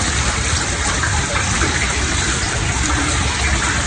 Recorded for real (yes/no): no